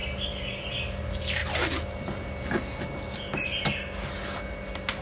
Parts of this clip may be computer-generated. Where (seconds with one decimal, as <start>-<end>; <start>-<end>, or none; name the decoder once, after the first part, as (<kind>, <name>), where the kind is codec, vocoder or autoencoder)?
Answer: none